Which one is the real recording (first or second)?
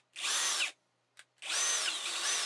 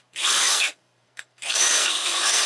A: first